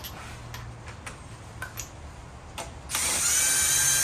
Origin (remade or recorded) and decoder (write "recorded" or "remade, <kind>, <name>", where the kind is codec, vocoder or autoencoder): recorded